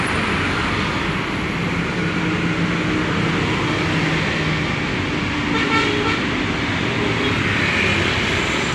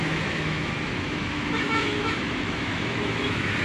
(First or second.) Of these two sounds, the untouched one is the first